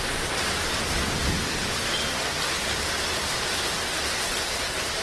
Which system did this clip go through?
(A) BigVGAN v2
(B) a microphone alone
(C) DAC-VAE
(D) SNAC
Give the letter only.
B